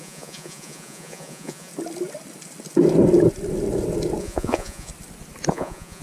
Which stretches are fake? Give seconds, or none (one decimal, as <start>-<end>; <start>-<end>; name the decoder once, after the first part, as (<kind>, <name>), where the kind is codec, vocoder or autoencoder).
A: 0.0-1.7 (vocoder, Vocos); 4.2-4.9; 5.5-6.0